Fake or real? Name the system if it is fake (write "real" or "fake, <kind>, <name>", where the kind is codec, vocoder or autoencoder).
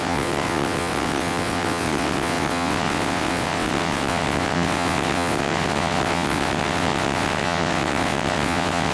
fake, vocoder, WaveNeXt